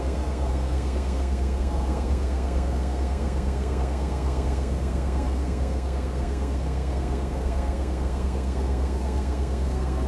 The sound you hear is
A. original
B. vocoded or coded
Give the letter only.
B